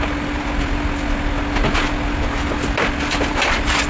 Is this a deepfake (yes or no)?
no